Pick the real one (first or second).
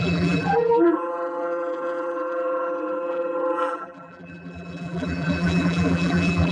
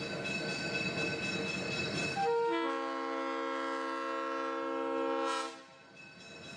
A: second